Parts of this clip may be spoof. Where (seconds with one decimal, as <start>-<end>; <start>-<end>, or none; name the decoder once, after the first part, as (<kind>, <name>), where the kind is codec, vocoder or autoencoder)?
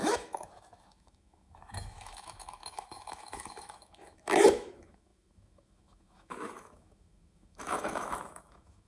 0.0-8.9 (autoencoder, DAC-VAE)